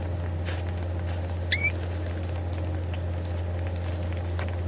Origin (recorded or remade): recorded